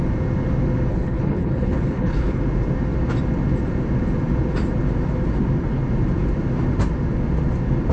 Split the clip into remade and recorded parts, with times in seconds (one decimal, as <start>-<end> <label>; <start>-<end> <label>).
0.0-0.9 recorded; 0.9-2.4 remade; 2.4-7.9 recorded